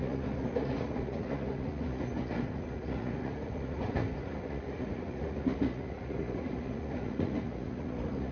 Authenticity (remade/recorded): remade